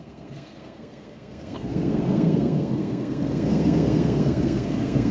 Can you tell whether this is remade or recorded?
remade